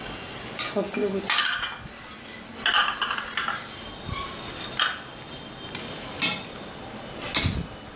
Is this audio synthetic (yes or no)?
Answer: no